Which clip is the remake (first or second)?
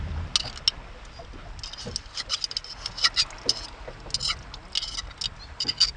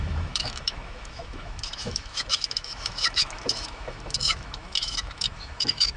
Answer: second